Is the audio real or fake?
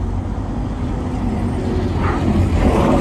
real